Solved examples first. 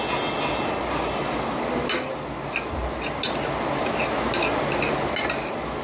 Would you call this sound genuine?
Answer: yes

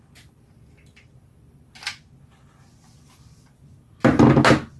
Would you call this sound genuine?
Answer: yes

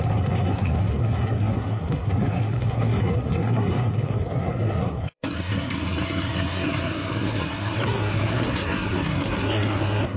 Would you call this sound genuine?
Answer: no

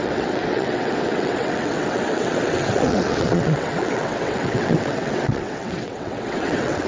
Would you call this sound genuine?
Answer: no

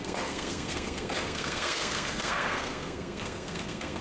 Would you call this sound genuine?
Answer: no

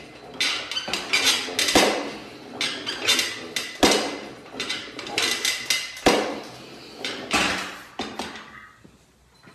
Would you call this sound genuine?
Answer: yes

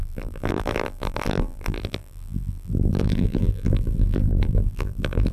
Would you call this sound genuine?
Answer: no